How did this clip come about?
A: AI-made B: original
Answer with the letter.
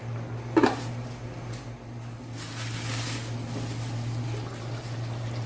B